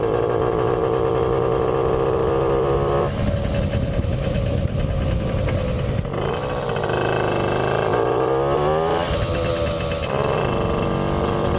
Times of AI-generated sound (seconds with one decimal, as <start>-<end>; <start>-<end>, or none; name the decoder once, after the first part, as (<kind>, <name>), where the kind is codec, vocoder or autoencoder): none